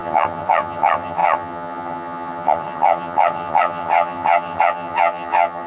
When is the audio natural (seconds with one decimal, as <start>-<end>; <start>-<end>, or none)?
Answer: none